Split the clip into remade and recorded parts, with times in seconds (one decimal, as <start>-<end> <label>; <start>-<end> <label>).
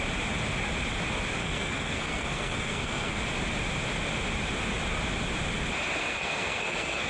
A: 0.0-1.4 recorded; 1.4-3.2 remade; 3.2-6.0 recorded; 6.0-7.1 remade